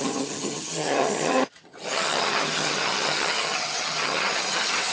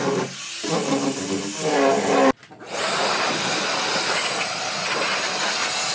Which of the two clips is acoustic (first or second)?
second